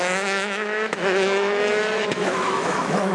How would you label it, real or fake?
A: fake